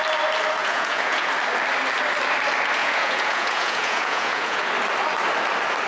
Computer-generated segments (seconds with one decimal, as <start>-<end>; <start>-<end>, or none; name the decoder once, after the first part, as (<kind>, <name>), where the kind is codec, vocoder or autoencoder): 0.6-1.3 (vocoder, Vocos); 2.8-4.7